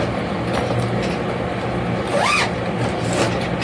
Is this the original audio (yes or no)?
yes